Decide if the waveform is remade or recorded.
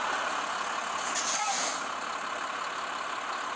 recorded